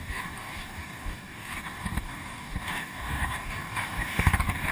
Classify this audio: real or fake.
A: fake